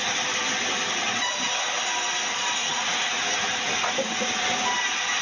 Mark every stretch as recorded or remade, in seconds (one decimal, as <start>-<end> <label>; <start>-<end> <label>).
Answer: 0.0-2.6 recorded; 2.6-3.2 remade; 3.2-5.2 recorded